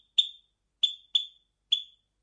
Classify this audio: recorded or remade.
recorded